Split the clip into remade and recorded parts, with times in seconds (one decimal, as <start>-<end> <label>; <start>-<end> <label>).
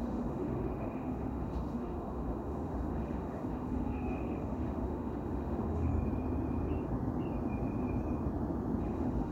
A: 0.0-5.9 remade; 5.9-8.8 recorded; 8.8-9.3 remade